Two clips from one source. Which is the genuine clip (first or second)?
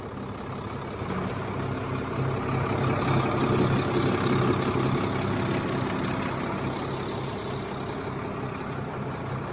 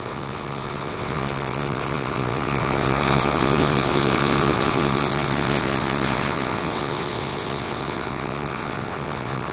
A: first